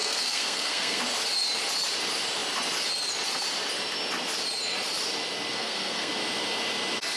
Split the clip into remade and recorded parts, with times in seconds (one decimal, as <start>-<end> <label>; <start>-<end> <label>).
0.0-1.0 remade; 1.0-5.5 recorded; 5.5-6.1 remade; 6.1-7.2 recorded